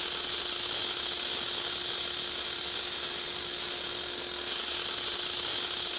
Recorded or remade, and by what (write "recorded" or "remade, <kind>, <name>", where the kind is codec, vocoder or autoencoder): recorded